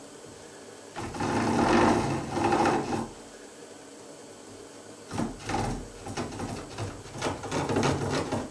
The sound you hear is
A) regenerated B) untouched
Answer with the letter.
B